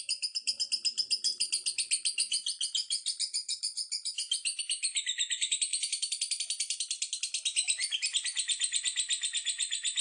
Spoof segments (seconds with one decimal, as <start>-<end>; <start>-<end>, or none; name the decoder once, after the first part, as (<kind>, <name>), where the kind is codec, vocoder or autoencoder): 1.3-4.6 (vocoder, BigVGAN v2); 5.7-6.4; 7.8-10.0